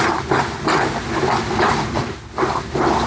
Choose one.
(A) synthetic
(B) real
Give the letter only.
B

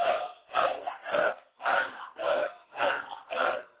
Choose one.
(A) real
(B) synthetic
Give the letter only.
B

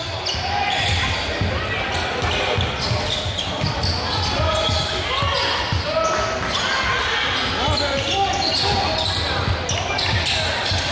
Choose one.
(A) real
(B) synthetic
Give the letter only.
A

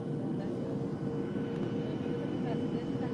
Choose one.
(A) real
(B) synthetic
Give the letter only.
A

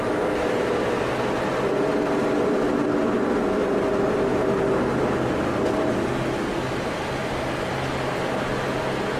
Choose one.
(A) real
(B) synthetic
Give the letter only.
A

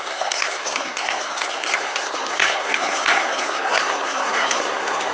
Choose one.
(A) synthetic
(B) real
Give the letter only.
A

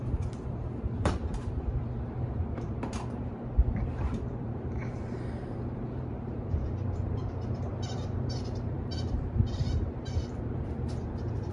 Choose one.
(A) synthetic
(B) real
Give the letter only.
A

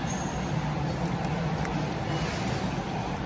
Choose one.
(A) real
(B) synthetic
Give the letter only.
A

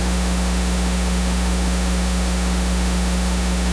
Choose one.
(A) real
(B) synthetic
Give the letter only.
B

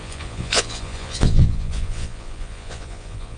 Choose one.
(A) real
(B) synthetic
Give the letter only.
B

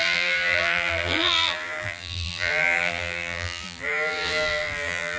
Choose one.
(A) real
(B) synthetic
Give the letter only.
B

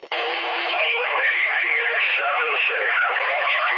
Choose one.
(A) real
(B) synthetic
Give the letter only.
B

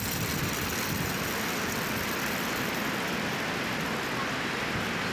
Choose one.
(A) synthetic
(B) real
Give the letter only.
B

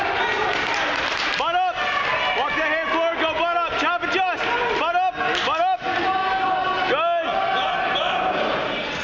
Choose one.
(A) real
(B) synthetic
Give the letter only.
A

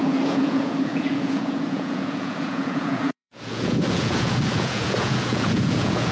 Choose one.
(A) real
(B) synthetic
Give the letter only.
B